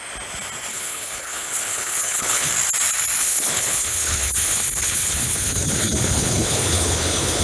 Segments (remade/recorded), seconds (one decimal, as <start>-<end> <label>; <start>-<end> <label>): 0.0-0.7 recorded; 0.7-2.5 remade; 2.5-3.2 recorded; 3.2-7.4 remade

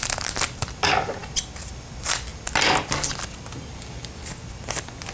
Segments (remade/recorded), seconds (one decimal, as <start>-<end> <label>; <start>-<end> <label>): 0.0-5.1 recorded

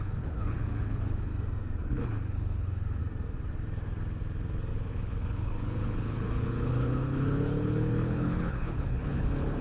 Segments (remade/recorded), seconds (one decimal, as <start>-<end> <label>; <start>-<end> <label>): 0.0-1.3 remade; 1.3-1.9 recorded; 1.9-3.0 remade; 3.0-4.7 recorded; 4.7-9.6 remade

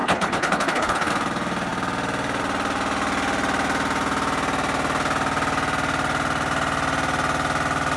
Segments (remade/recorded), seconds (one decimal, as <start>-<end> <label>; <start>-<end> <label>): 0.0-1.1 remade; 1.1-8.0 recorded